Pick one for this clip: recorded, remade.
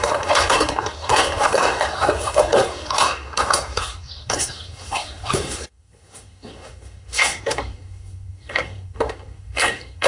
remade